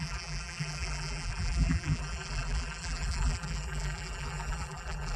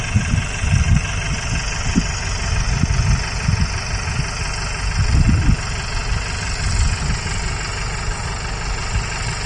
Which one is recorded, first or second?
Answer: second